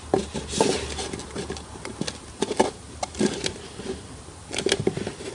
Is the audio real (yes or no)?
yes